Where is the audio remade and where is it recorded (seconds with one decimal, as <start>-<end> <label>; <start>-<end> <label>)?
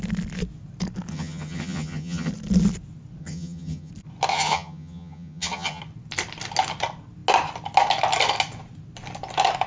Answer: 0.0-1.1 recorded; 1.1-2.3 remade; 2.3-3.2 recorded; 3.2-3.9 remade; 3.9-4.3 recorded; 4.3-5.8 remade; 5.8-9.7 recorded